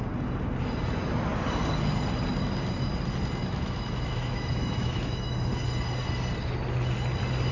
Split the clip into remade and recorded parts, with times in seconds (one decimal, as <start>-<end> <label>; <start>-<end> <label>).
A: 0.0-3.4 recorded; 3.4-5.5 remade; 5.5-7.5 recorded